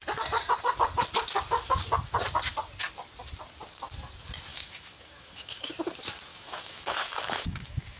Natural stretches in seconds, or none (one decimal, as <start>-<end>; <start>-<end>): 0.0-4.5; 5.7-6.3